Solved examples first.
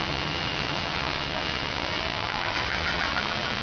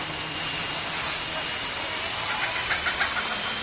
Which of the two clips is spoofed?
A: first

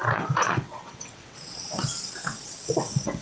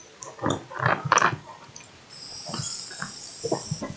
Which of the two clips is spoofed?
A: first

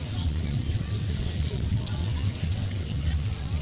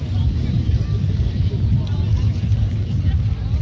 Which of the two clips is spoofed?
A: first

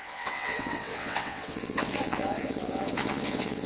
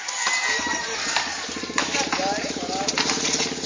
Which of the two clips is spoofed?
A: first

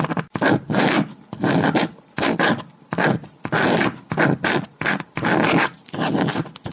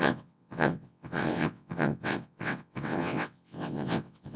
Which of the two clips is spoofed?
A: second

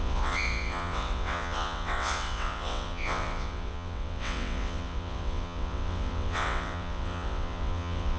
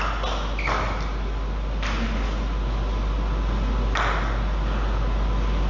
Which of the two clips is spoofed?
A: first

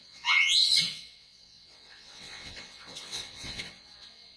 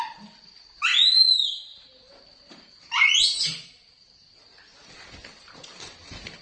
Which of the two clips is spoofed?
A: first